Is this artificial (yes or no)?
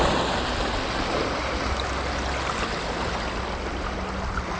no